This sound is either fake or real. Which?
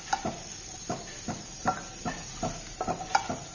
real